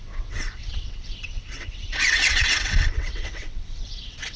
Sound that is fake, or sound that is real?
fake